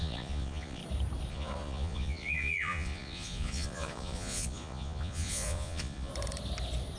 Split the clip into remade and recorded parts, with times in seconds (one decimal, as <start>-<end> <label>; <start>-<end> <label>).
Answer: 0.0-0.8 remade; 0.8-1.3 recorded; 1.3-6.1 remade; 6.1-7.0 recorded